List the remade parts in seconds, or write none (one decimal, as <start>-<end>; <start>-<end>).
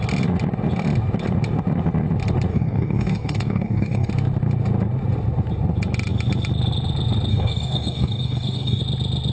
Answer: 2.5-4.1; 7.3-8.8